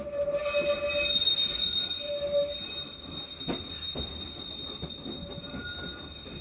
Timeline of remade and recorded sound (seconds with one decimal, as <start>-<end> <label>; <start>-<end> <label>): 0.0-6.4 recorded